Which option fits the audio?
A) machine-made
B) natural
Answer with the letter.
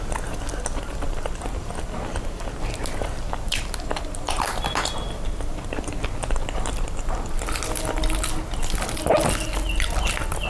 B